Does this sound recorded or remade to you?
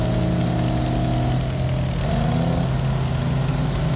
recorded